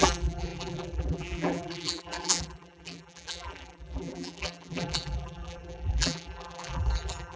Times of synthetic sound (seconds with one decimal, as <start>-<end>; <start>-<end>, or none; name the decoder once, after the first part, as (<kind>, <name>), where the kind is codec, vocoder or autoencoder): 0.0-7.4 (vocoder, BigVGAN v2)